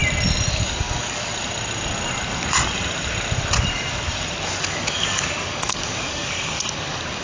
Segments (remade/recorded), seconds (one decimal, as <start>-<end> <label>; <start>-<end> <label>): 0.0-0.5 recorded; 0.5-1.3 remade; 1.3-4.6 recorded; 4.6-7.2 remade